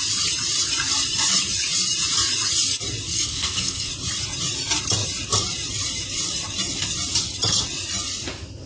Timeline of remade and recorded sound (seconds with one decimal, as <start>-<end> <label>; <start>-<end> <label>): 0.0-3.1 recorded; 3.1-3.9 remade; 3.9-8.7 recorded